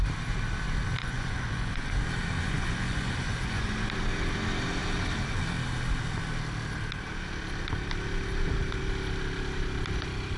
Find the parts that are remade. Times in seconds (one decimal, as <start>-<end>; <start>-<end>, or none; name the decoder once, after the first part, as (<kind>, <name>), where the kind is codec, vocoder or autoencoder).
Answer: 1.0-1.9 (vocoder, Vocos); 2.4-3.9